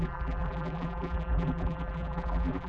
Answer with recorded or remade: remade